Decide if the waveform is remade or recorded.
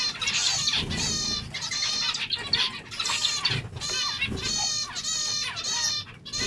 recorded